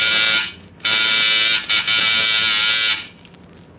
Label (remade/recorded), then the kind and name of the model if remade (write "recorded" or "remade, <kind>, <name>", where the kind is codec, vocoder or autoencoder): recorded